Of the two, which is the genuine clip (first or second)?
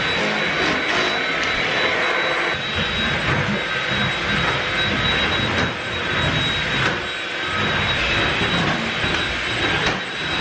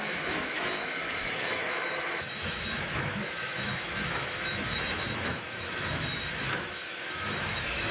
first